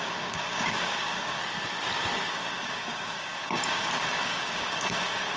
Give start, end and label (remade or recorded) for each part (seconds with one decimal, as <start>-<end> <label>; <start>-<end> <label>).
0.0-1.4 remade; 1.4-2.3 recorded; 2.3-5.4 remade

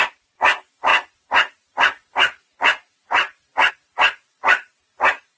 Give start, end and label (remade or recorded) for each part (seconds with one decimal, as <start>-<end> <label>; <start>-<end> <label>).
0.0-5.4 remade

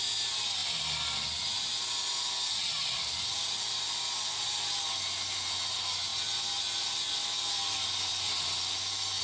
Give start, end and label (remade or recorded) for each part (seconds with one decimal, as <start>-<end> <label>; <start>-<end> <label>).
0.0-9.2 recorded

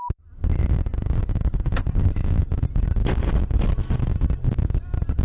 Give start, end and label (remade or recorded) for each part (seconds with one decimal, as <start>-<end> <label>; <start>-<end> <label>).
0.0-5.2 recorded